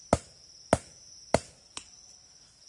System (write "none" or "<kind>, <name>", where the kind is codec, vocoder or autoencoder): none